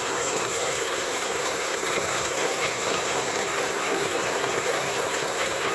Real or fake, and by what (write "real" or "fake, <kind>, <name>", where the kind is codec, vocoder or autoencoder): fake, codec, SNAC